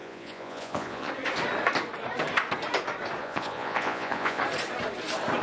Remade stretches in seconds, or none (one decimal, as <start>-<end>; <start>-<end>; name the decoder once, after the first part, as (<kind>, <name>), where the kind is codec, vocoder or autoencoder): 0.0-1.1 (vocoder, Vocos); 3.2-4.4